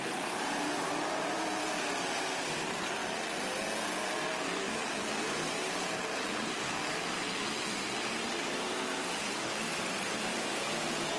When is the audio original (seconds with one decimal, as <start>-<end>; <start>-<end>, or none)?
3.0-7.7

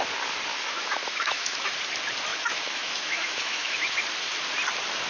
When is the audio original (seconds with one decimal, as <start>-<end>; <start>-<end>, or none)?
0.0-0.5; 1.7-2.3; 4.0-5.1

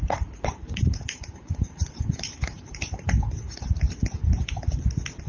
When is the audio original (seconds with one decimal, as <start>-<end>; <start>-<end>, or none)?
0.0-0.6; 3.8-5.3

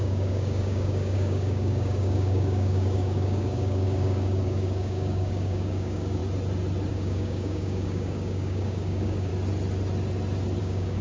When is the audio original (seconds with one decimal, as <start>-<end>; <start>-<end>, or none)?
6.2-6.9; 9.3-10.6

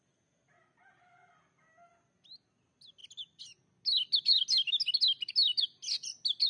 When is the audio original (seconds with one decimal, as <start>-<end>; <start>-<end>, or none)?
0.0-6.5

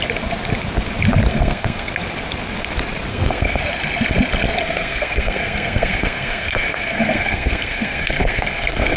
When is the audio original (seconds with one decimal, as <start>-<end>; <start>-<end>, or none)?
0.0-1.3; 1.9-3.1; 3.6-4.6

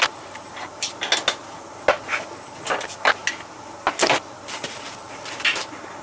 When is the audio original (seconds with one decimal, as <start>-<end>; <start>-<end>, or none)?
0.0-6.0